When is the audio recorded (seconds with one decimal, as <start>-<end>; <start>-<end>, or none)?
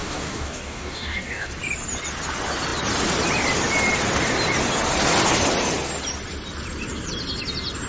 1.5-7.9